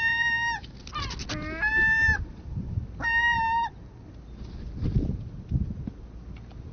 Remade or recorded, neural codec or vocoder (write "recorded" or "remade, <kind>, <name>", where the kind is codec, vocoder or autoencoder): recorded